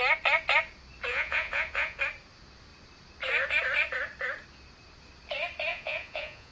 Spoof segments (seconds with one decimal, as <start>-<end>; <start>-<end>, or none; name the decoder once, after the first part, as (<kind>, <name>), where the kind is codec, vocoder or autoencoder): 1.1-2.0 (vocoder, Vocos); 5.7-6.5